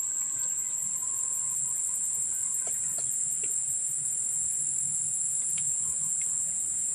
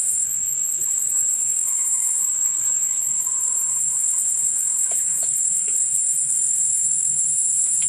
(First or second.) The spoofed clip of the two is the second